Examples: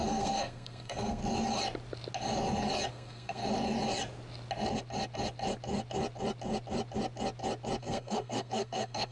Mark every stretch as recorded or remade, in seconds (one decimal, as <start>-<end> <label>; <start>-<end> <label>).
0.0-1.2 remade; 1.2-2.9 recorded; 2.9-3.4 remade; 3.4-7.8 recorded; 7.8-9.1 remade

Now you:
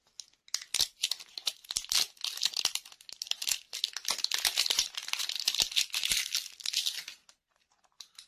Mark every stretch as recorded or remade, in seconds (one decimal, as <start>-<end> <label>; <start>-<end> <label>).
0.0-8.3 recorded

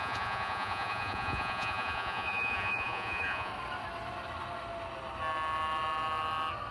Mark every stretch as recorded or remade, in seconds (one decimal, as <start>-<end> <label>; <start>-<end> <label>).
0.0-3.5 remade; 3.5-6.7 recorded

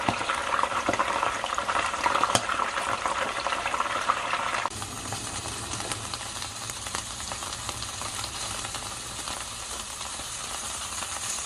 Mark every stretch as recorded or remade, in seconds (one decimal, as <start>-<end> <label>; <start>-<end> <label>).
0.0-11.5 remade

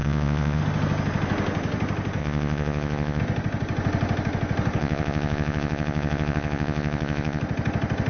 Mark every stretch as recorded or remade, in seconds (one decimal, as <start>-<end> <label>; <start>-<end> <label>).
0.0-0.6 remade; 0.6-2.2 recorded; 2.2-3.2 remade; 3.2-4.8 recorded; 4.8-7.4 remade; 7.4-8.1 recorded

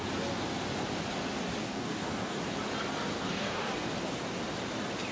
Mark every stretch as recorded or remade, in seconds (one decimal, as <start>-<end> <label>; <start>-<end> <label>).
0.0-1.6 recorded; 1.6-2.4 remade; 2.4-3.1 recorded; 3.1-3.7 remade; 3.7-5.1 recorded

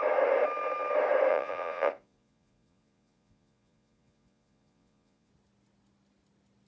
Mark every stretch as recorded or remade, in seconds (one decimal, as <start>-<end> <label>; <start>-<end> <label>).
0.0-1.3 recorded; 1.3-5.3 remade; 5.3-6.7 recorded